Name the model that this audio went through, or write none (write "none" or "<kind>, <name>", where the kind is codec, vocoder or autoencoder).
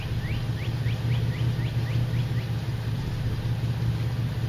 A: none